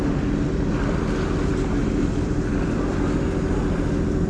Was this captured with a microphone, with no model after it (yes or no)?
yes